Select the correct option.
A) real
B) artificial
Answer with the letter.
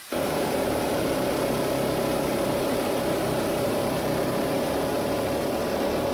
B